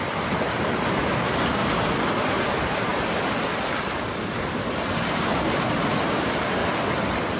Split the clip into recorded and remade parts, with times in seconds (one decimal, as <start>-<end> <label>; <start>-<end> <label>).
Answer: 0.0-1.6 remade; 1.6-2.1 recorded; 2.1-2.9 remade; 2.9-4.3 recorded; 4.3-6.6 remade; 6.6-7.4 recorded